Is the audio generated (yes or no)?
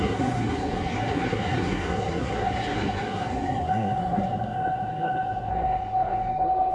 yes